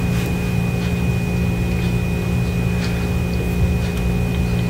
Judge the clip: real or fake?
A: real